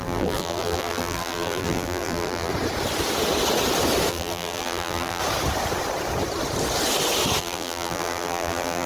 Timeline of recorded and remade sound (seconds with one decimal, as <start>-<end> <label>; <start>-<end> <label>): 0.0-2.5 remade; 2.5-4.1 recorded; 4.1-5.2 remade; 5.2-7.4 recorded; 7.4-8.9 remade